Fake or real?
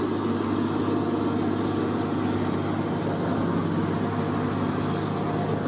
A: real